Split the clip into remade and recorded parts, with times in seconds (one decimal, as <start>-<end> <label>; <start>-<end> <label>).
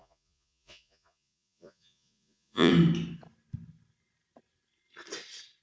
0.0-2.7 remade; 2.7-5.6 recorded